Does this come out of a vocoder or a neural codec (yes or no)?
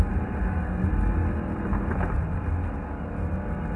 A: no